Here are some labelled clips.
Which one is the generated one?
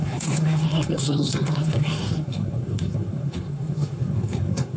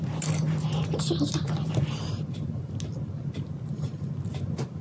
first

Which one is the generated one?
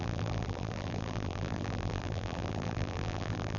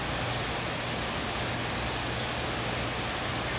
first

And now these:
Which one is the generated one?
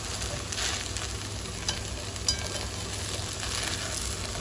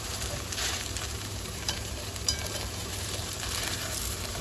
second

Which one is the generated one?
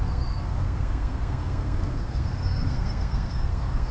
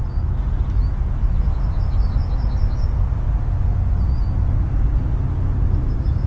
first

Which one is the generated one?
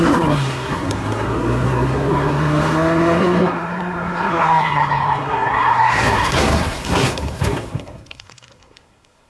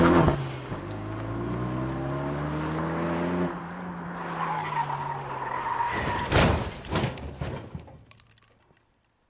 first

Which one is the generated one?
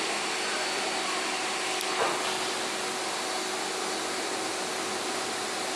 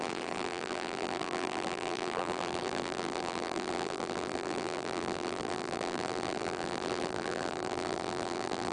second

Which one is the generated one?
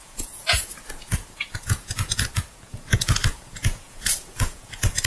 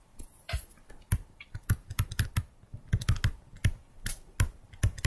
first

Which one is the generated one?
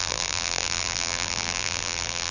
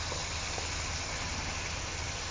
first